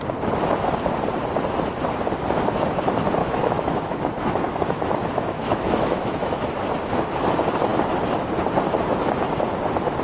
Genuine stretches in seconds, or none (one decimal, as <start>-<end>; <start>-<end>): 0.0-3.2; 6.6-10.0

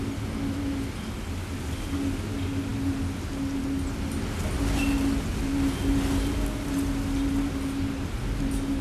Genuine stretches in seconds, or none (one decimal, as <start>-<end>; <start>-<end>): 0.0-8.8

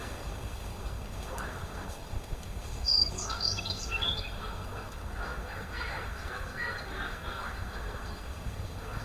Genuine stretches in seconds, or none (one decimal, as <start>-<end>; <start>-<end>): none

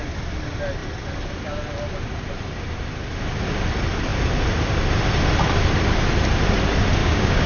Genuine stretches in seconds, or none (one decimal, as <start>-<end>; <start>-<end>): 0.0-7.0

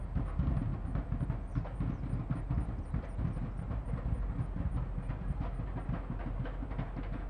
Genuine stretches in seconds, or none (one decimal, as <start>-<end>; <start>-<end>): 0.0-7.3

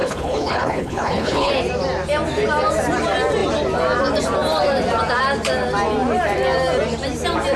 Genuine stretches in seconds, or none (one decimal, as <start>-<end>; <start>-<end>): 1.5-7.6

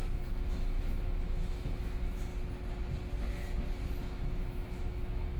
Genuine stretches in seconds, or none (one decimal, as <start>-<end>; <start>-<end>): 2.3-4.0

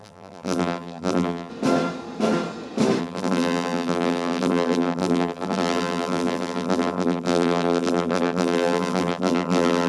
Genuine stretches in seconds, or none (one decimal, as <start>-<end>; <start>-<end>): 1.5-3.0